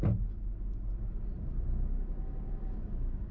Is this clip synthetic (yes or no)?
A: no